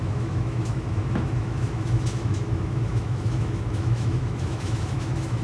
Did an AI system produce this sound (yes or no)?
yes